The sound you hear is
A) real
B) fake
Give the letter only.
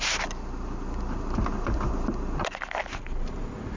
A